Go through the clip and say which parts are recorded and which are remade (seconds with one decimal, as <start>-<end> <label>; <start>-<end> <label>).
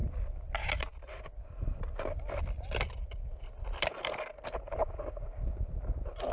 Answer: 0.0-3.8 remade; 3.8-6.3 recorded